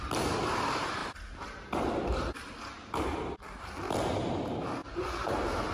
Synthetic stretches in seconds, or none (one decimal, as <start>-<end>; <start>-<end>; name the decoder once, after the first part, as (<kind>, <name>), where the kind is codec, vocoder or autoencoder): 4.8-5.3 (vocoder, BigVGAN v2)